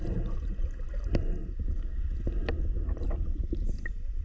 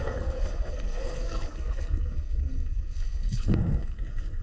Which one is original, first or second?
first